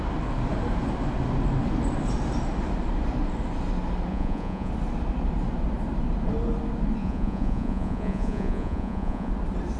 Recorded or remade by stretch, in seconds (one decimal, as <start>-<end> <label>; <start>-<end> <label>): 0.0-4.1 recorded; 4.1-4.7 remade; 4.7-7.0 recorded; 7.0-9.3 remade; 9.3-9.8 recorded